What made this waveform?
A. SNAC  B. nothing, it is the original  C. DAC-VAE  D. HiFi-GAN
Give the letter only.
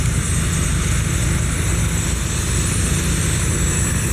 B